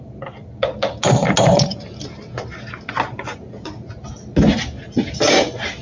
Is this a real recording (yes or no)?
yes